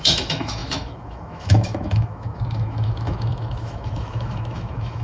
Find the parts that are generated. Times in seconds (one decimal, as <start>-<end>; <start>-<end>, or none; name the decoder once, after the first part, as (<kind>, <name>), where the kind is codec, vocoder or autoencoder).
0.0-5.0 (autoencoder, DAC-VAE)